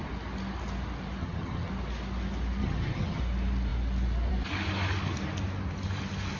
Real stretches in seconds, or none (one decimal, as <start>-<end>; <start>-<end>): 0.0-1.2; 1.7-2.6; 3.2-6.4